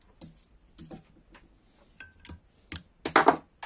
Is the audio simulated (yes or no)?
no